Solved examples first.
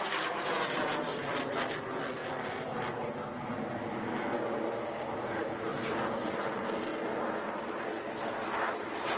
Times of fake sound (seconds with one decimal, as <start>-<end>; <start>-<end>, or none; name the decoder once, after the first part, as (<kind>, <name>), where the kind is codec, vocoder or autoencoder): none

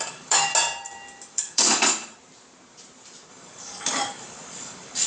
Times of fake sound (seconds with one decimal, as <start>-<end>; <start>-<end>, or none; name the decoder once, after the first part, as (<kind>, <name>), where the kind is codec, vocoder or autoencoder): 0.0-0.5 (codec, DAC); 1.3-1.9; 3.3-5.1

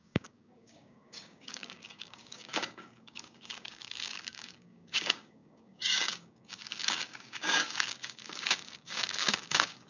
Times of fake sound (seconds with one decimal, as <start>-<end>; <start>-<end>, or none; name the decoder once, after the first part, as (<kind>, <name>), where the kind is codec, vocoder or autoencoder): 0.0-9.9 (codec, DAC)

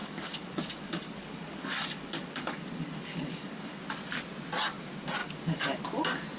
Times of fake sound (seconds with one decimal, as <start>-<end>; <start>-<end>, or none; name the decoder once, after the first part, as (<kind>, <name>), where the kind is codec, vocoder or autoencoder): 0.0-3.8 (codec, DAC); 5.2-5.8

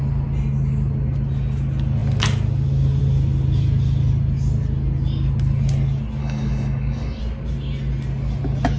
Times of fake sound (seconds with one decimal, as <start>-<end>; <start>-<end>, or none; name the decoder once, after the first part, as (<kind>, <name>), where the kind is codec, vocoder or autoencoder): 6.2-7.2 (codec, DAC)

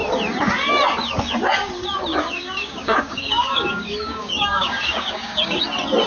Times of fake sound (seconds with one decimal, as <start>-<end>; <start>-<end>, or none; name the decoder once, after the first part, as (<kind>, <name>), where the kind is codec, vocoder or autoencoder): 2.1-5.6 (codec, DAC)

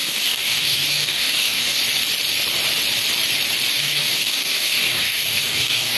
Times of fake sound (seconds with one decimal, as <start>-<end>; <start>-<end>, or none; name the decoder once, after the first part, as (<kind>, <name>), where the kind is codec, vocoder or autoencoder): 0.0-1.8 (codec, DAC); 3.7-6.0